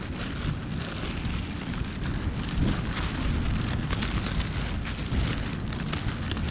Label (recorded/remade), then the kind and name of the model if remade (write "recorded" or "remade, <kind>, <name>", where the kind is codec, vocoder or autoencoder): recorded